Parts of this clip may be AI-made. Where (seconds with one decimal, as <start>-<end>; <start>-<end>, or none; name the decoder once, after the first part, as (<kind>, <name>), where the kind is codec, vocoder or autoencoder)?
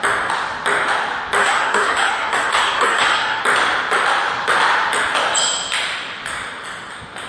1.4-3.4 (codec, SNAC)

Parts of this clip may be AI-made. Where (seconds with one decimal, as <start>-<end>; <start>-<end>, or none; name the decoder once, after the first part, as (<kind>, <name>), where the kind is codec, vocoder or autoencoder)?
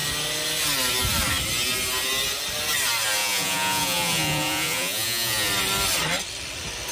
3.2-5.5 (vocoder, Vocos)